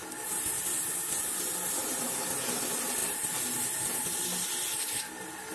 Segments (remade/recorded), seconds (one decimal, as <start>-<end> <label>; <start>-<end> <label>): 0.0-5.5 recorded

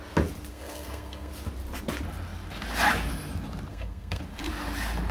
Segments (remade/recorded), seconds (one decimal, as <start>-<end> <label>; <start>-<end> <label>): 0.0-0.5 recorded; 0.5-1.3 remade; 1.3-3.7 recorded; 3.7-4.2 remade; 4.2-5.1 recorded

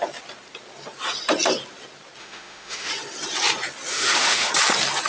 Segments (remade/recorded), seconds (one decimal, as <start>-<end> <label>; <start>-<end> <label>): 0.0-2.2 recorded; 2.2-2.9 remade; 2.9-3.9 recorded; 3.9-4.5 remade; 4.5-5.1 recorded

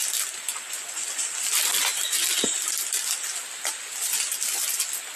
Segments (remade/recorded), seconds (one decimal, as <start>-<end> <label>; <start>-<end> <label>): 0.0-5.2 recorded

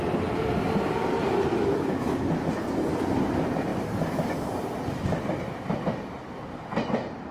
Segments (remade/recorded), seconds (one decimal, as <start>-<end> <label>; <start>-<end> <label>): 0.0-1.5 recorded; 1.5-2.5 remade; 2.5-7.3 recorded

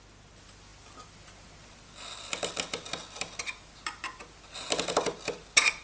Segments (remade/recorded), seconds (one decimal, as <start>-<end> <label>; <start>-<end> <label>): 0.0-5.8 recorded